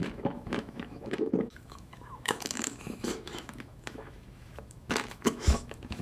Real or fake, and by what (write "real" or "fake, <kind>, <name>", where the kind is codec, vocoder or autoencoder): fake, autoencoder, DAC-VAE